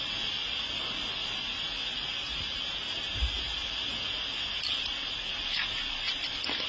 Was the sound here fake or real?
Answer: real